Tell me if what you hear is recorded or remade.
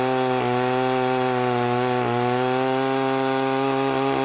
recorded